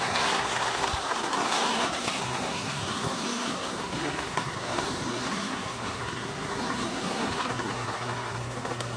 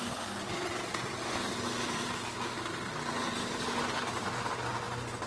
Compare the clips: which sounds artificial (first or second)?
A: first